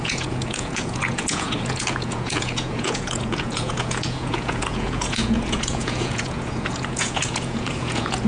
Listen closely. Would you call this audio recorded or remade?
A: remade